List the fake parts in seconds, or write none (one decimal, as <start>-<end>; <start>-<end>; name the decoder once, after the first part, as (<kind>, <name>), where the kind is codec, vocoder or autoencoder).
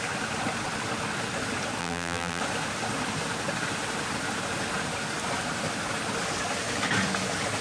1.8-2.4 (vocoder, BigVGAN v2)